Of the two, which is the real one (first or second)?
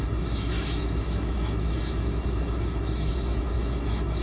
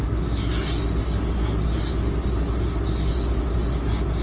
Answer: second